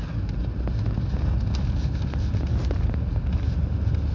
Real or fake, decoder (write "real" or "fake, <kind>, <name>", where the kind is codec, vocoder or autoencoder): real